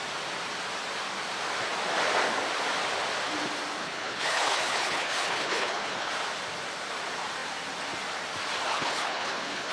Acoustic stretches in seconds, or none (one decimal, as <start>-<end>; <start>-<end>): 0.0-3.8; 6.1-8.7